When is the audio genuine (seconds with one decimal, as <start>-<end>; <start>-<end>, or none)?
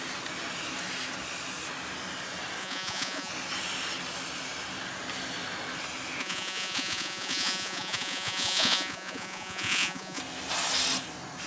0.0-2.6; 3.3-6.2; 10.2-11.5